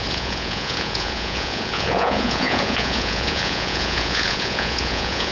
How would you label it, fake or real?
fake